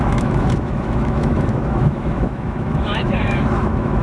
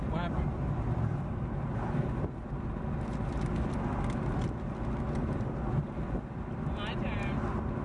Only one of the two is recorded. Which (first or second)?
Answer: second